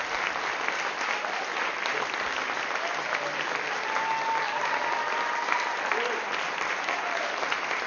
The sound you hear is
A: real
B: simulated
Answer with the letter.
A